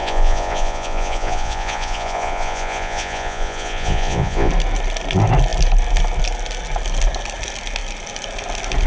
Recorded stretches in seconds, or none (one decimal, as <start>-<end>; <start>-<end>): 4.5-8.9